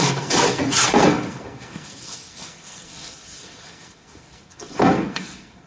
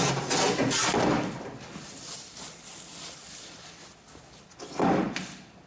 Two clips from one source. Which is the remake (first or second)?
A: first